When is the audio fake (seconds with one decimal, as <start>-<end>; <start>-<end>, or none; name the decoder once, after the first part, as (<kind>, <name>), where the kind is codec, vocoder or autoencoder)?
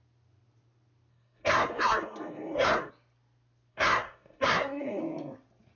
1.1-2.9 (codec, SNAC); 3.7-5.0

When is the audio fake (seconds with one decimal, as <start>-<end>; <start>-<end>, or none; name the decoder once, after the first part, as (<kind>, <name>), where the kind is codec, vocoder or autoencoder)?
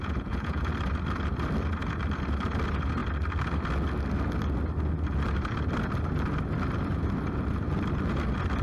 0.0-0.6 (vocoder, Vocos)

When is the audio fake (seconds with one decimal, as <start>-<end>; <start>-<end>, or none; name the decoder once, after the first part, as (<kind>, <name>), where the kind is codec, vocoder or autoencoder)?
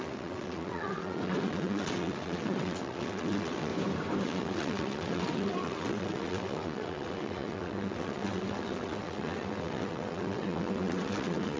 0.0-3.7 (vocoder, WaveNeXt); 4.2-11.6